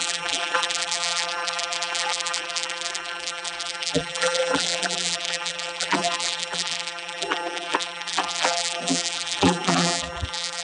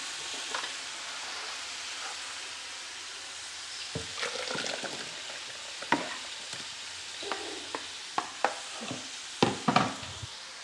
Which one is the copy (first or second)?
first